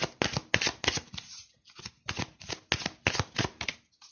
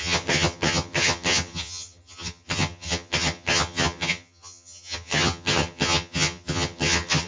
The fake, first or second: second